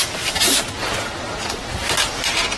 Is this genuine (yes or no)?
yes